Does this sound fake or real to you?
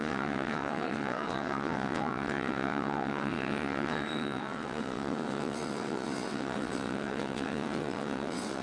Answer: fake